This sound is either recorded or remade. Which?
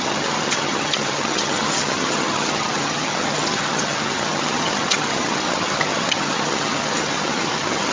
remade